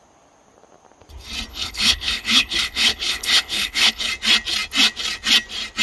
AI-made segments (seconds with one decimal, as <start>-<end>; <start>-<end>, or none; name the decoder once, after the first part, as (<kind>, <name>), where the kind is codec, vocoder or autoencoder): 1.5-4.1 (codec, HILCodec)